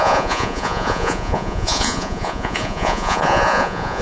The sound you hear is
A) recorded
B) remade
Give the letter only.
B